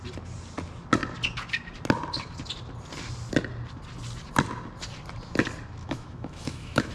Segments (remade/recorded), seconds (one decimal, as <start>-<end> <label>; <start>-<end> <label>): 0.0-5.8 recorded; 5.8-6.9 remade